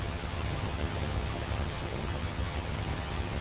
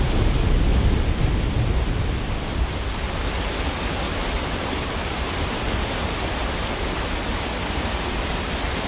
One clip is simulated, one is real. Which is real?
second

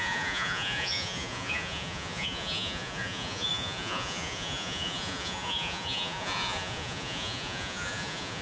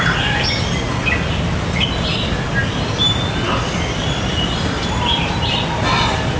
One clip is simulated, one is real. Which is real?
second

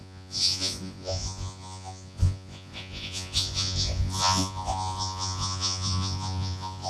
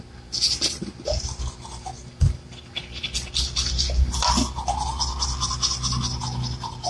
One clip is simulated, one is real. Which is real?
second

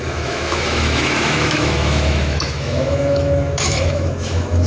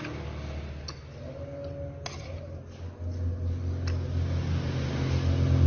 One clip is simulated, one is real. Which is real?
second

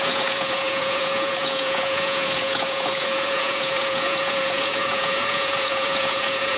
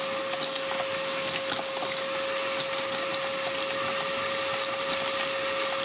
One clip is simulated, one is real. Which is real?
second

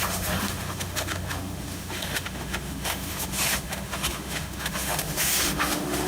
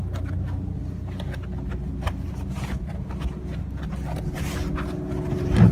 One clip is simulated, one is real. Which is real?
second